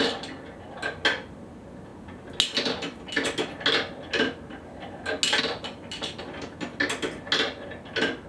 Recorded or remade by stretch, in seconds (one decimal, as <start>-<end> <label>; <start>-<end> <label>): 0.0-8.3 recorded